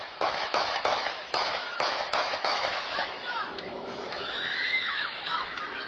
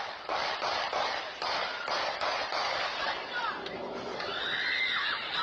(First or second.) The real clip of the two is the second